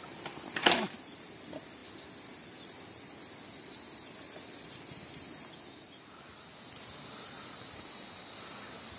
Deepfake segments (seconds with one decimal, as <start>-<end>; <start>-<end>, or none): none